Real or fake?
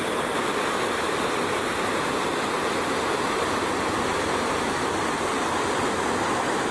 real